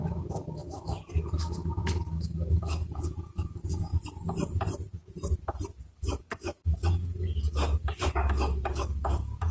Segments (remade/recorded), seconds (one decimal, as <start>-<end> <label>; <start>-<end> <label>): 0.0-3.9 remade; 3.9-6.2 recorded; 6.2-9.5 remade